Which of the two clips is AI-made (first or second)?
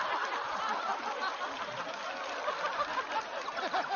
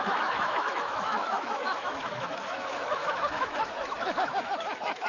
second